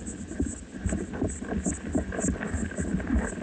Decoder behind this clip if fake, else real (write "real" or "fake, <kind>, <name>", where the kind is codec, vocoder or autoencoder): real